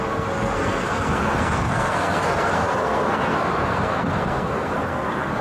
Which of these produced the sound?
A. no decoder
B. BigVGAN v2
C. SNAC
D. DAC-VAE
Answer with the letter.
C